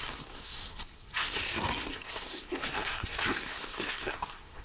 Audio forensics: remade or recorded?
remade